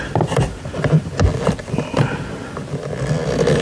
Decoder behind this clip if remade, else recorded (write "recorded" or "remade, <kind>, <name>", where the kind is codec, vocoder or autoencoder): recorded